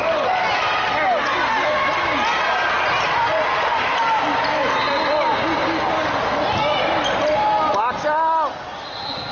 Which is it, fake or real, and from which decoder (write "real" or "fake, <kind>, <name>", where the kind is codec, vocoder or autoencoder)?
real